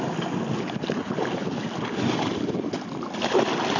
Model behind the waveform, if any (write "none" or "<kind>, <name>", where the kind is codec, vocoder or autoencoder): none